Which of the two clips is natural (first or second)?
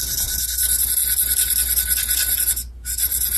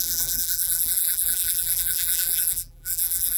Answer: first